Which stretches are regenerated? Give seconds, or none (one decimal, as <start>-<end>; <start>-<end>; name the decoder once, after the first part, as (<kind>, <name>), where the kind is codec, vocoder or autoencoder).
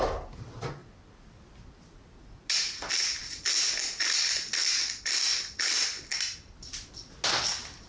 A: none